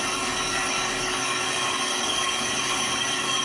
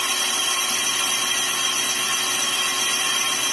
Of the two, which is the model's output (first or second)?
first